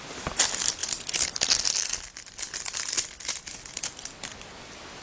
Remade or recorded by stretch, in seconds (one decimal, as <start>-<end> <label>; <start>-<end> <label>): 0.0-5.0 recorded